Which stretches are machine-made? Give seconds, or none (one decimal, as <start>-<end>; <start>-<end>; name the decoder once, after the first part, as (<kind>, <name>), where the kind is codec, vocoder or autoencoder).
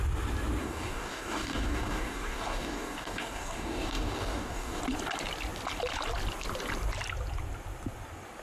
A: 0.6-4.8 (codec, DAC)